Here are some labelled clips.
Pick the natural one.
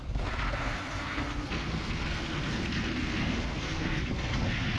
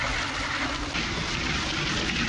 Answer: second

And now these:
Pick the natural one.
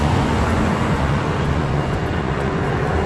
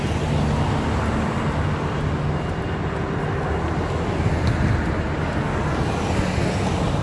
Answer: second